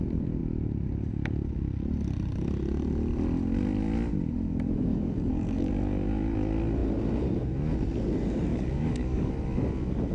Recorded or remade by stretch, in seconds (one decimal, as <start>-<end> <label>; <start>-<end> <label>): 0.0-4.9 recorded; 4.9-5.7 remade; 5.7-8.5 recorded; 8.5-9.3 remade; 9.3-10.1 recorded